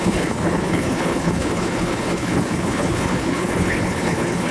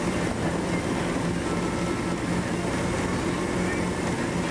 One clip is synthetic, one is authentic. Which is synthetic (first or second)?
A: first